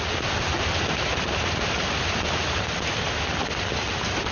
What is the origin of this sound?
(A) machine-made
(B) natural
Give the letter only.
B